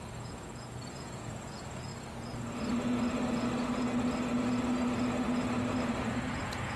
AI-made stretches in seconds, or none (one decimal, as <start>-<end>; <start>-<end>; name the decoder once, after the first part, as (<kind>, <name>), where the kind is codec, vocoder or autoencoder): 0.0-1.9 (vocoder, Vocos); 6.0-6.8